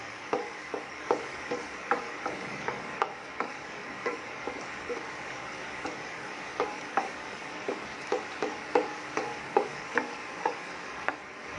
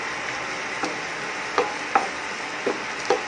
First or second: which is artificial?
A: first